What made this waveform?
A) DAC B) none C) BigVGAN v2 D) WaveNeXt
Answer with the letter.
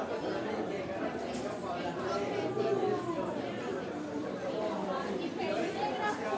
C